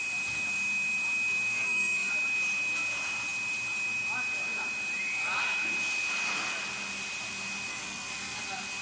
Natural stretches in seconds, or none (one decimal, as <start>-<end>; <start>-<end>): 0.0-1.5; 2.1-7.7; 8.4-8.8